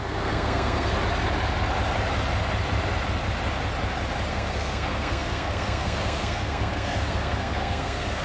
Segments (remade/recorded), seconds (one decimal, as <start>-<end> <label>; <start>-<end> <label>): 0.0-0.9 remade; 0.9-4.3 recorded; 4.3-8.2 remade